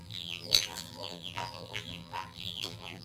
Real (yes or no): no